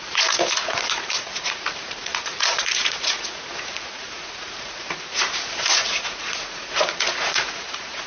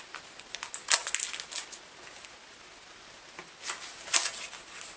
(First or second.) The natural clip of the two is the second